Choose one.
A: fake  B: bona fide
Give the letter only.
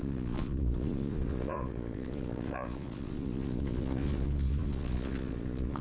A